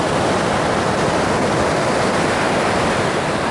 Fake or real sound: real